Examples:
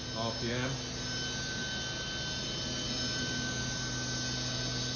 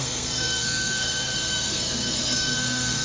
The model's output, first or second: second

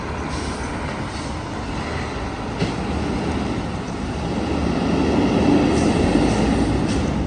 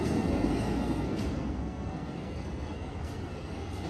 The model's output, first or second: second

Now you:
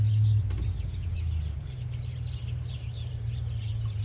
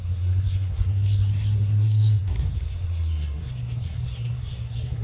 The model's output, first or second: second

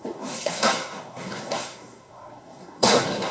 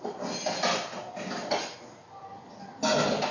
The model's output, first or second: first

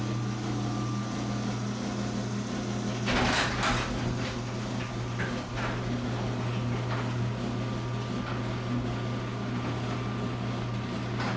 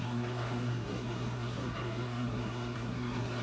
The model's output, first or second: second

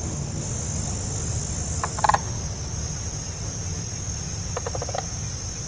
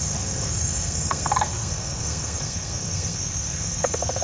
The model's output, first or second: second